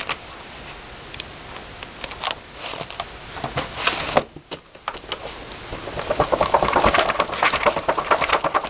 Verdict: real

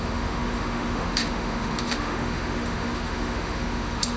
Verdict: fake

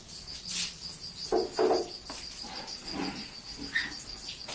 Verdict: real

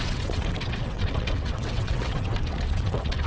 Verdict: fake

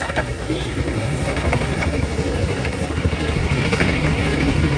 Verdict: fake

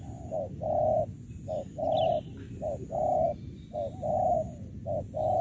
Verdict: real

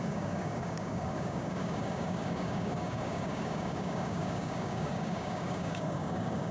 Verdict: fake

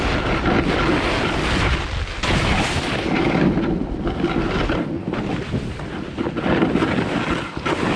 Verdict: real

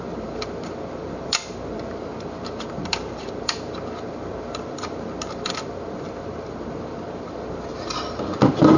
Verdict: fake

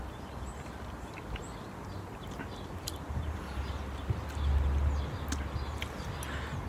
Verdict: real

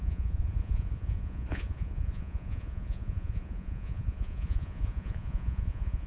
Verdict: fake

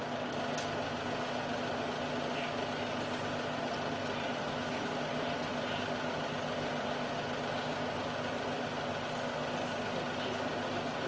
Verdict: real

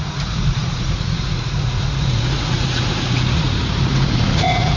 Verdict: fake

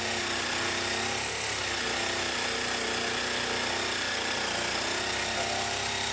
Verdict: real